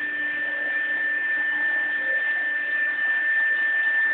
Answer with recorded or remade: recorded